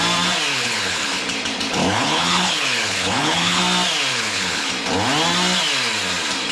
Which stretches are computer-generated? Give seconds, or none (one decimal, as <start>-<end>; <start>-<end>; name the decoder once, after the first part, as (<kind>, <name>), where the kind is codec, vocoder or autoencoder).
0.5-1.2 (codec, HILCodec); 1.8-3.6; 4.1-4.7